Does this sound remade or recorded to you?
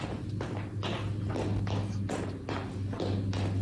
recorded